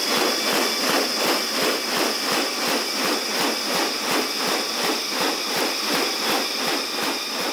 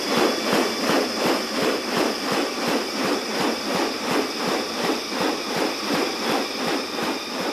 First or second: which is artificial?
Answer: second